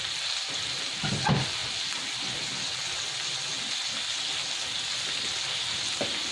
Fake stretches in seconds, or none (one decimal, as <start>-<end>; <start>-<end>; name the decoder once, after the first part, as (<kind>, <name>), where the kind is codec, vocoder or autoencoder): none